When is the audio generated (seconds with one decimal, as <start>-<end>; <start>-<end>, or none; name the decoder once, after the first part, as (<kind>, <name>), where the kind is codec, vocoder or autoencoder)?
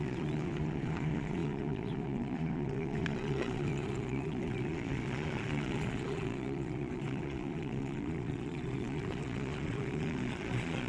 0.0-10.9 (vocoder, Vocos)